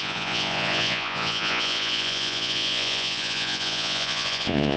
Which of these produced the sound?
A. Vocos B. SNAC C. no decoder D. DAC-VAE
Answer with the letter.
A